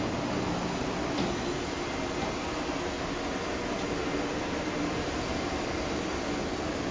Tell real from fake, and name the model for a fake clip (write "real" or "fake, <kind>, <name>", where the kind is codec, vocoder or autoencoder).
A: real